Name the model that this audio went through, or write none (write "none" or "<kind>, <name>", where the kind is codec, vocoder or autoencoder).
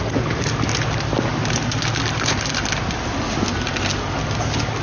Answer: none